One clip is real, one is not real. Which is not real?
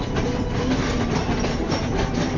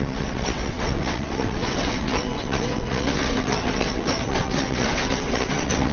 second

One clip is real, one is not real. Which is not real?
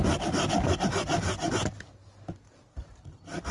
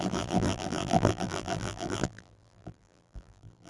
second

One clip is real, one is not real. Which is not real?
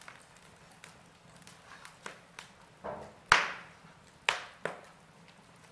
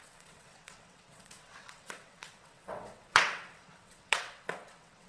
second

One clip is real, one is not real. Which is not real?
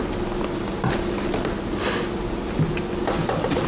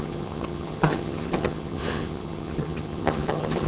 second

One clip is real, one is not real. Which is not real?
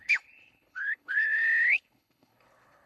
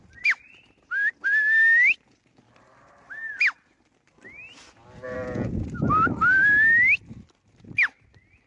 first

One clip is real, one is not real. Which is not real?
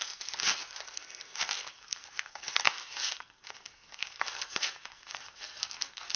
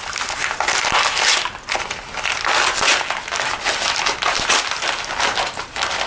first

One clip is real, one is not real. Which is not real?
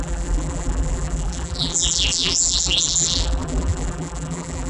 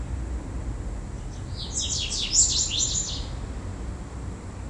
first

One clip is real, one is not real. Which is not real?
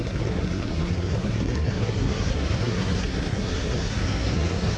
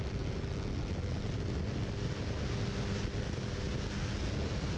first